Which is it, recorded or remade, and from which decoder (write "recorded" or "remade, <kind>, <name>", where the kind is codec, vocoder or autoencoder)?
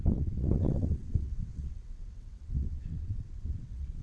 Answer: remade, vocoder, WaveNeXt